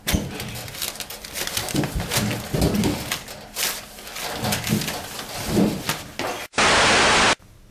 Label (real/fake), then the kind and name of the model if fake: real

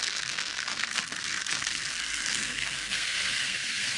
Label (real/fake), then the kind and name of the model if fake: fake, codec, SNAC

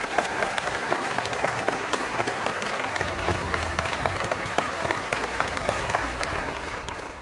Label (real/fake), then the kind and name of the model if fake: fake, codec, SNAC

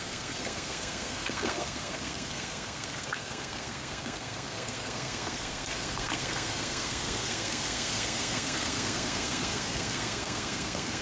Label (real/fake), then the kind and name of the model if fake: fake, codec, SNAC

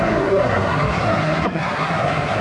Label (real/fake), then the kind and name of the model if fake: fake, codec, SNAC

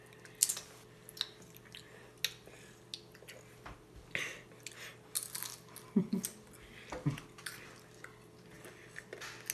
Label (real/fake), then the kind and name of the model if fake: real